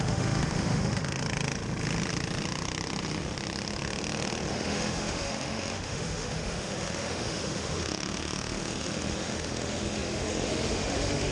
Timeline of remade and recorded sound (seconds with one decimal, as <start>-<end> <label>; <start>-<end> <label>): 0.0-1.2 remade; 1.2-4.5 recorded; 4.5-11.3 remade